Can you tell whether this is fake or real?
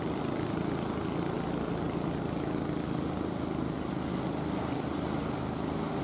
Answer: real